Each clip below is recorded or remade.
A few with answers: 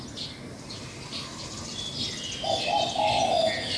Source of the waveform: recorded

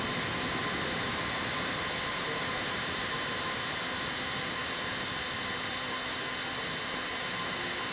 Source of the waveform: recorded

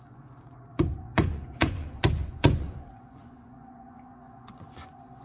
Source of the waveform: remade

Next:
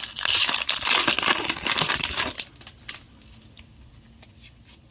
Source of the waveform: recorded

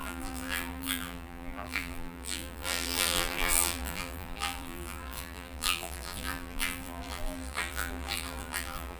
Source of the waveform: remade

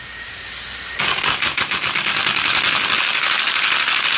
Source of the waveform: recorded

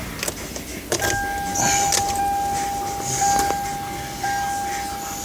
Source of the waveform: recorded